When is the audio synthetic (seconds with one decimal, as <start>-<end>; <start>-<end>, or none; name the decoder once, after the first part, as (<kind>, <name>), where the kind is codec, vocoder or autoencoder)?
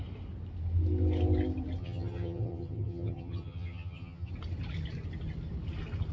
1.8-4.3 (vocoder, HiFi-GAN)